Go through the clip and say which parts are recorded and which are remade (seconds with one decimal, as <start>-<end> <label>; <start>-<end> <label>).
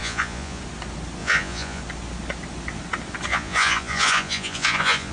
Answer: 0.0-0.6 remade; 0.6-1.2 recorded; 1.2-1.8 remade; 1.8-3.3 recorded; 3.3-5.1 remade